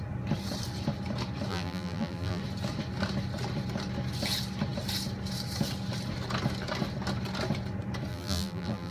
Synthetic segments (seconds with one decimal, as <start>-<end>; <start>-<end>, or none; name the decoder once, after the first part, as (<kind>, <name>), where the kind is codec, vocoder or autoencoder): 1.5-2.4 (vocoder, BigVGAN v2); 8.1-8.9